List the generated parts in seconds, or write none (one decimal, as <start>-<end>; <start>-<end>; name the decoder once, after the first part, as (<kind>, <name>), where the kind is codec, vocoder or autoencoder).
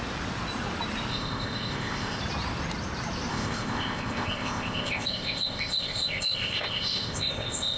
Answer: 1.1-2.2 (codec, ZipCodec); 3.3-7.8